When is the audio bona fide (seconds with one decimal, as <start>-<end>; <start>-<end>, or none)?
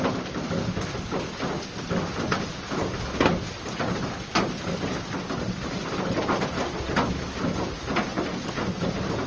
0.0-9.3